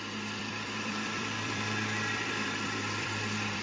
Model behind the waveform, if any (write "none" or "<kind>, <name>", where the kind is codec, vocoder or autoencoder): vocoder, BigVGAN v2